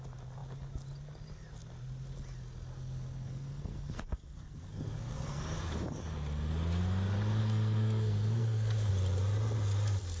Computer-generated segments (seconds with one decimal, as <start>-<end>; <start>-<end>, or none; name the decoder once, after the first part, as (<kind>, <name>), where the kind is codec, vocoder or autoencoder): 2.7-5.4 (codec, SNAC); 7.4-8.9